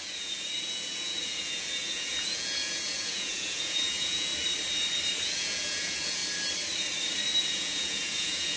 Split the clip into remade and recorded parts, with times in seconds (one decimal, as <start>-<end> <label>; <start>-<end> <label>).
0.0-4.3 remade; 4.3-5.2 recorded; 5.2-6.2 remade; 6.2-7.4 recorded; 7.4-8.6 remade